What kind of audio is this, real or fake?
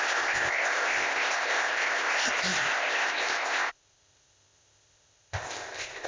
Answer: fake